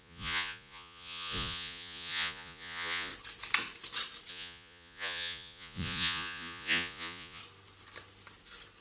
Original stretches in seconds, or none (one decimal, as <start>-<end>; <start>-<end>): 3.1-4.3; 7.4-8.8